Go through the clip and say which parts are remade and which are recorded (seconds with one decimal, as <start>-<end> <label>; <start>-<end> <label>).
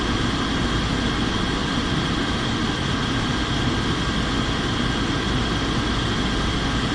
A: 0.0-1.6 recorded; 1.6-4.3 remade; 4.3-6.9 recorded